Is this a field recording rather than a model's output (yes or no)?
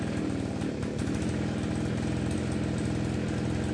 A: yes